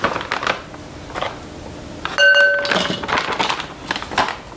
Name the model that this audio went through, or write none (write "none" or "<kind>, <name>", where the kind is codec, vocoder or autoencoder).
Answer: none